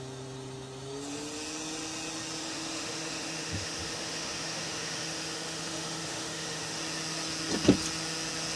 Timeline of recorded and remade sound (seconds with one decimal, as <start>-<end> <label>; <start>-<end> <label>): 0.0-2.4 recorded; 2.4-6.8 remade; 6.8-8.6 recorded